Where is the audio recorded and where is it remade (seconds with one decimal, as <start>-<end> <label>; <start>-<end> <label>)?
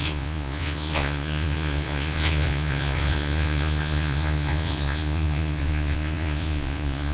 0.0-7.1 remade